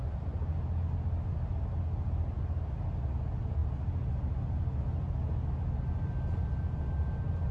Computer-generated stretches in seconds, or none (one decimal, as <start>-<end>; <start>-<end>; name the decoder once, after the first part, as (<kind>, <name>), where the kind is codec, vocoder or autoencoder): none